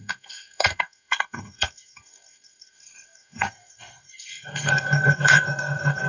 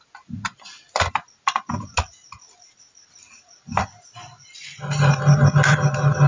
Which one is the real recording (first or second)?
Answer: second